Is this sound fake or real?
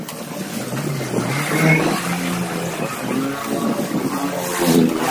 real